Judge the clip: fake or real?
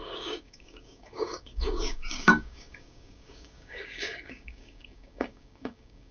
fake